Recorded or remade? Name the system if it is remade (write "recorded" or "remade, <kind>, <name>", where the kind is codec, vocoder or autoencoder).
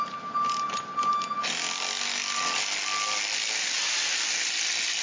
recorded